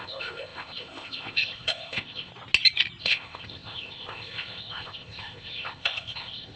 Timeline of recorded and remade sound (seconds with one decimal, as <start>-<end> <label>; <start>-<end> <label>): 0.0-2.3 remade; 2.3-3.0 recorded; 3.0-6.6 remade